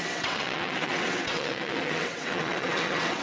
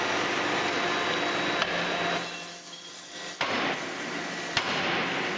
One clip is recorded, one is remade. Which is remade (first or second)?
first